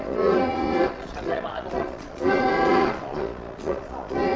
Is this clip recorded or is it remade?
remade